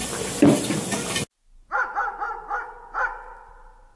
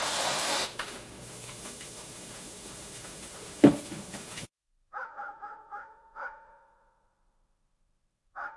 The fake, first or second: second